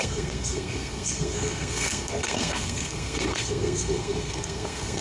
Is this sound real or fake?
fake